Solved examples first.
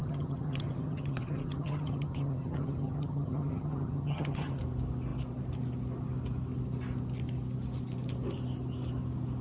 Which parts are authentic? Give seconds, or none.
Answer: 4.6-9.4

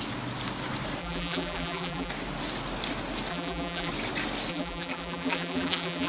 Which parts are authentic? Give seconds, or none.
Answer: 0.0-1.0; 2.1-3.3; 3.9-4.5

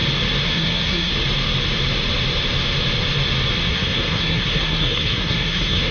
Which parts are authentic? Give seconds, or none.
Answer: 0.0-0.5; 1.1-3.7

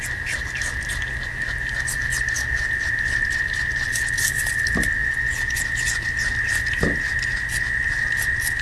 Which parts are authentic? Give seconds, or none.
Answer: 0.0-5.0; 5.6-8.6

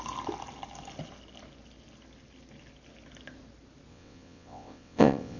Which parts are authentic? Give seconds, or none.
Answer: 0.0-3.9

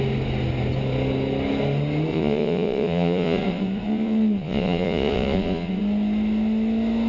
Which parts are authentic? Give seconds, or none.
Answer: 0.0-2.1; 5.8-7.1

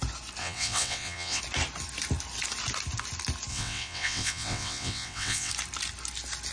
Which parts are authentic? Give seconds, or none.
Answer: 0.0-0.4; 1.4-3.5; 5.5-6.5

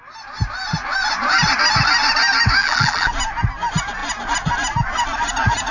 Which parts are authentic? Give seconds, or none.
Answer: 0.0-2.6; 3.1-5.7